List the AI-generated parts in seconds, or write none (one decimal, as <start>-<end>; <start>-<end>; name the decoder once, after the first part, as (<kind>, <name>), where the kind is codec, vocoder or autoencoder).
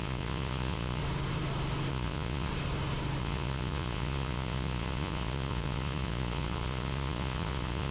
0.0-1.0 (vocoder, Vocos); 1.9-2.5; 3.2-7.9